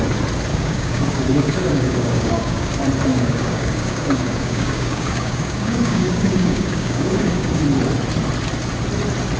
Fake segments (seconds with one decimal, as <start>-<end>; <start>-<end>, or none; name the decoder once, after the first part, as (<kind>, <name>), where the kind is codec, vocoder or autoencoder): 0.5-2.7 (codec, DAC); 3.1-7.6